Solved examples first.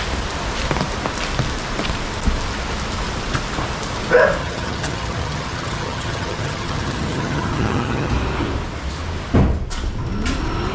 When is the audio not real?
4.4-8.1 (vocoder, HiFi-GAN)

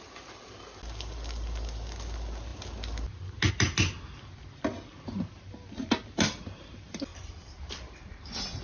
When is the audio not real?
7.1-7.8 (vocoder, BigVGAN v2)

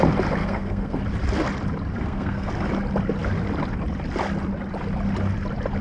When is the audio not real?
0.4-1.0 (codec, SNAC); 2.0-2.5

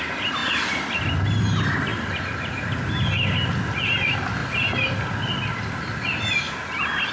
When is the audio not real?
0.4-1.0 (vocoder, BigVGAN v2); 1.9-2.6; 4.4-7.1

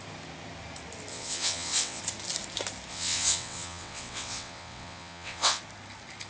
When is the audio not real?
1.1-2.0 (vocoder, WaveNeXt); 2.9-5.6

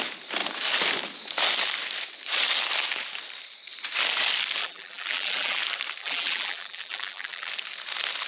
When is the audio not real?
4.6-5.6 (vocoder, BigVGAN v2); 6.0-7.5

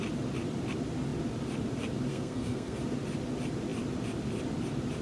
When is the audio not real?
2.1-2.8 (codec, SNAC)